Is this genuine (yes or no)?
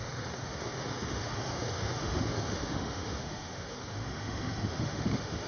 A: no